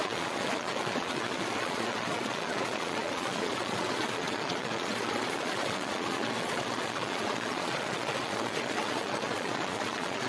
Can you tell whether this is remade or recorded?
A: remade